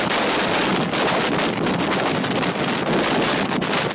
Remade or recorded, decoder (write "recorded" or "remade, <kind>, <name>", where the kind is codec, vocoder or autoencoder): recorded